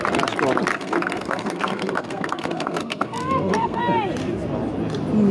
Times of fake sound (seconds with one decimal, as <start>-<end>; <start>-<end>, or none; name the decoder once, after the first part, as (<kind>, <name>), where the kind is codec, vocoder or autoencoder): 0.7-3.8 (codec, SNAC)

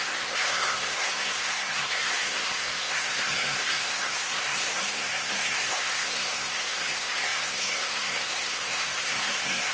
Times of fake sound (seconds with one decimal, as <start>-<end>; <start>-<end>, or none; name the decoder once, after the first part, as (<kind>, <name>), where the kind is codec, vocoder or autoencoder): 0.0-9.7 (codec, SNAC)

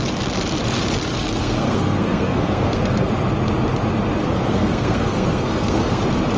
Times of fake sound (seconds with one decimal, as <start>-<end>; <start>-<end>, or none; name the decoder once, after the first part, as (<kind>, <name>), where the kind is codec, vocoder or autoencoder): 1.2-3.1 (codec, SNAC); 4.2-6.0

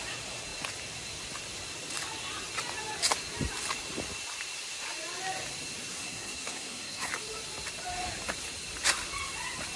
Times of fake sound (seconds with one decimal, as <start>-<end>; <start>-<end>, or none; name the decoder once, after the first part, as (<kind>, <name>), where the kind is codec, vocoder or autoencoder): 5.9-7.1 (codec, SNAC)

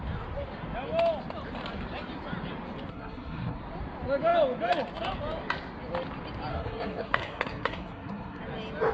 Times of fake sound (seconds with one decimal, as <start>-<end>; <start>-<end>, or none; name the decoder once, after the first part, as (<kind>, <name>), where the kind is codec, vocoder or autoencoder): 2.9-3.6 (codec, SNAC); 6.5-8.4

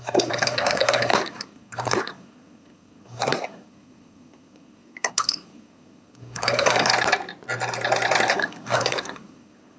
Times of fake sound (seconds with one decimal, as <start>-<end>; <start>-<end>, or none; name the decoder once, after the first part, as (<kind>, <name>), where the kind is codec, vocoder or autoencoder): 0.0-6.9 (codec, SNAC); 8.3-9.8

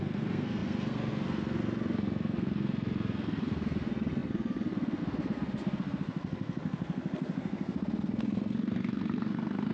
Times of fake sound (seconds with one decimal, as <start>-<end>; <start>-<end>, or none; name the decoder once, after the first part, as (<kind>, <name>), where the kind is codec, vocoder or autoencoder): 0.0-9.7 (codec, SNAC)